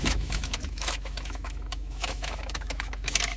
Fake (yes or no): yes